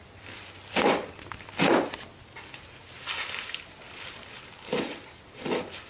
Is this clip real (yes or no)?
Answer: yes